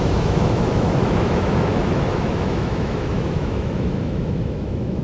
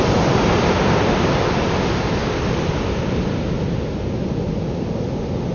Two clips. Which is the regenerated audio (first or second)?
first